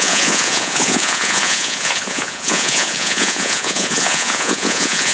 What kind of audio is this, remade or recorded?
remade